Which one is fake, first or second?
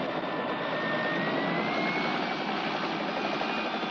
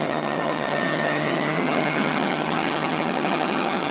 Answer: second